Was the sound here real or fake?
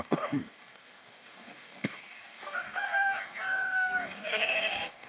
fake